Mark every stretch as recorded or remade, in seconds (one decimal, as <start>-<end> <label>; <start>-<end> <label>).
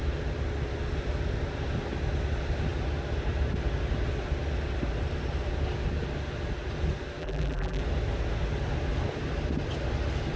0.0-7.2 recorded; 7.2-7.8 remade; 7.8-10.4 recorded